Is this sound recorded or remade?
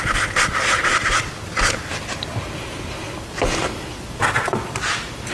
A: recorded